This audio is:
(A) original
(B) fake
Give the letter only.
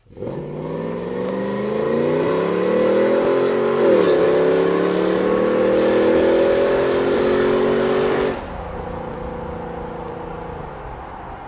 A